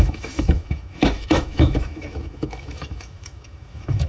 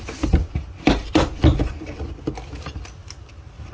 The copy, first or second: first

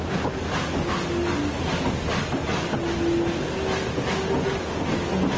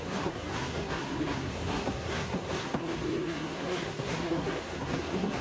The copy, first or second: second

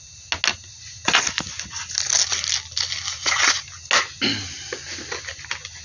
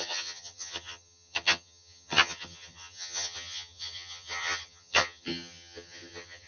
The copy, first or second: second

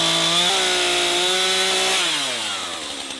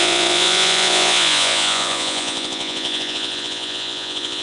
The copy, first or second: second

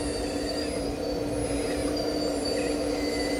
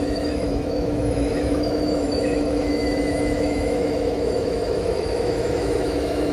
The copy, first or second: second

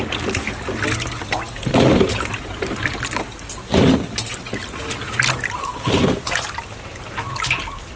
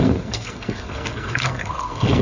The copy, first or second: second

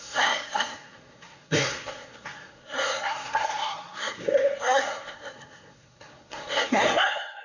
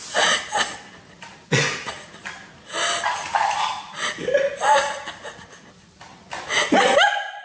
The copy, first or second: first